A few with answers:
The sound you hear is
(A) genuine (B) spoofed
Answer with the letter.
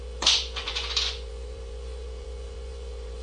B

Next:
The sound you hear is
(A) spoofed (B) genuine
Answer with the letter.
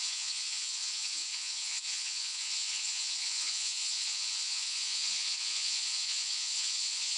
A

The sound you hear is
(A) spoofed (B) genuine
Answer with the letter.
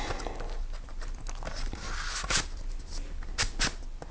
B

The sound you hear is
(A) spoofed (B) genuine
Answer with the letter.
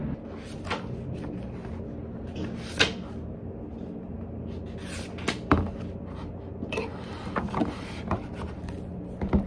B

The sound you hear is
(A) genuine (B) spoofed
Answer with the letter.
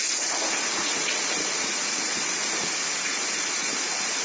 B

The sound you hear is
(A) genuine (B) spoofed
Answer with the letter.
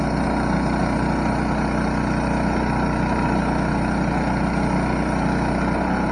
A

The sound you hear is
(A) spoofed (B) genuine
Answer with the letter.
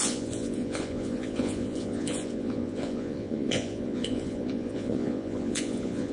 A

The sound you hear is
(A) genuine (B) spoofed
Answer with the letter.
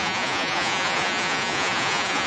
B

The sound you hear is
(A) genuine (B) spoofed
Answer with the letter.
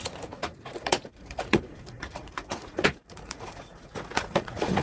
B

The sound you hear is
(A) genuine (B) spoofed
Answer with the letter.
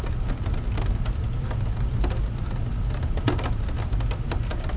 A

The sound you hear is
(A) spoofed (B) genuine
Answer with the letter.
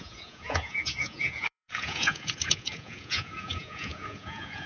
A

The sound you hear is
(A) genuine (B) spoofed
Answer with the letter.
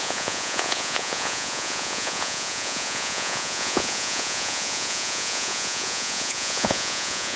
B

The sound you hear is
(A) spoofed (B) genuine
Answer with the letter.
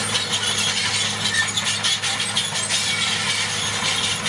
B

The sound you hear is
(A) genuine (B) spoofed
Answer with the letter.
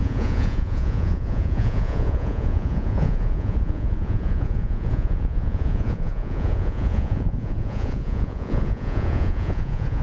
B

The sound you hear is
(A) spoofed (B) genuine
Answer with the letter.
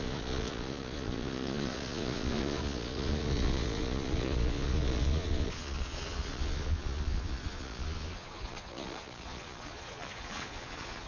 A